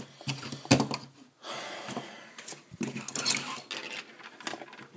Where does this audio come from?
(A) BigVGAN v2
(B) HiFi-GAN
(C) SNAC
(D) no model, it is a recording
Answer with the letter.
D